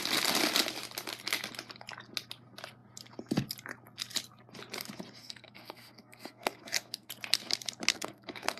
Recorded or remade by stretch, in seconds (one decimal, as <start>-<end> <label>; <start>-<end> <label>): 0.0-5.2 recorded; 5.2-7.1 remade; 7.1-7.9 recorded; 7.9-8.6 remade